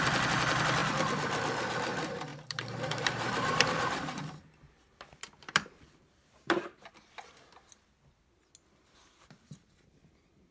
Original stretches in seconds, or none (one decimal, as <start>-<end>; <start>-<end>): 0.0-2.3; 6.9-10.5